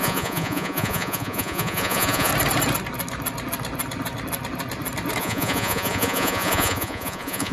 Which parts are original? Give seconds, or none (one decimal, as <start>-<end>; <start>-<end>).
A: 2.3-5.2